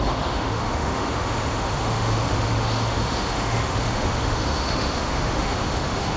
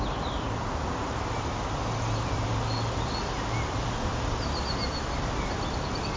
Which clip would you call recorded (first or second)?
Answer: second